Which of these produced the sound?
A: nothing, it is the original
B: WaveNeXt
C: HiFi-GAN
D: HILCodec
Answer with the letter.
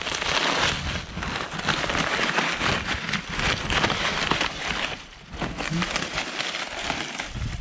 A